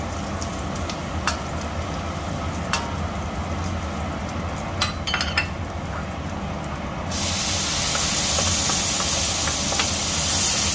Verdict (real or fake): real